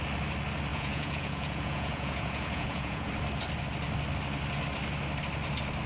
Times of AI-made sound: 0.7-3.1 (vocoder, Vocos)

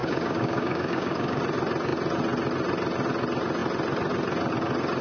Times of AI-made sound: 0.0-1.4 (codec, DAC)